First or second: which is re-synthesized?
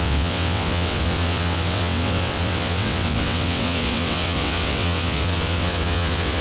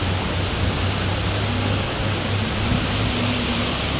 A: first